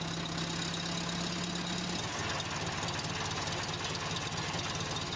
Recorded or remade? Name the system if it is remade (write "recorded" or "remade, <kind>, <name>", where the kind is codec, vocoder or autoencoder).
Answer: recorded